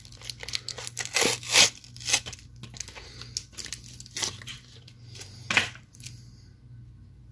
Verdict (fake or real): real